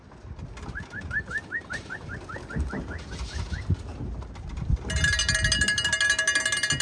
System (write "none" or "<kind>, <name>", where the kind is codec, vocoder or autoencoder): none